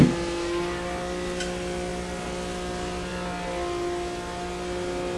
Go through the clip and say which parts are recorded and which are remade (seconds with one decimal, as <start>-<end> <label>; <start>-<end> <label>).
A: 0.0-5.2 recorded